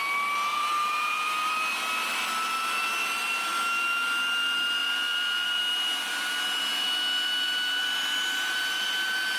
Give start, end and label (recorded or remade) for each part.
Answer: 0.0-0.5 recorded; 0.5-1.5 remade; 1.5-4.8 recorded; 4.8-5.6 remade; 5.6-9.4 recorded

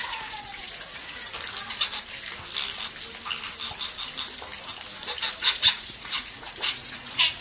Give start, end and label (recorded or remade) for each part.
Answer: 0.0-1.3 remade; 1.3-5.4 recorded; 5.4-7.4 remade

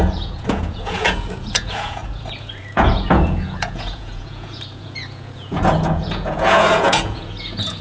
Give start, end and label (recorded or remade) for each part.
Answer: 0.0-7.8 remade

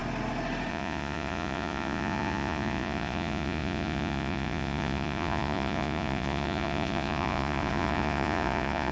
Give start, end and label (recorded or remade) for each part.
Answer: 0.0-0.7 recorded; 0.7-8.9 remade

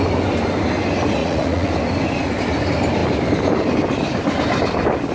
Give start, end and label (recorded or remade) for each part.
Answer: 0.0-1.2 recorded; 1.2-1.7 remade; 1.7-5.1 recorded